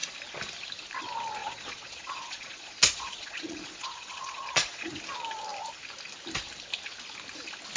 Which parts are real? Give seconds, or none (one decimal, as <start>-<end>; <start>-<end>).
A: 0.0-1.4; 4.9-7.8